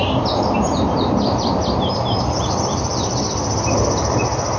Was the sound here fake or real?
real